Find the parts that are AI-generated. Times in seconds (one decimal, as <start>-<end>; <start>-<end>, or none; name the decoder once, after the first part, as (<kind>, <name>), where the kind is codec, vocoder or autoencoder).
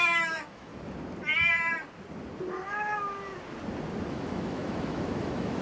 0.0-0.7 (autoencoder, DAC-VAE); 4.1-5.6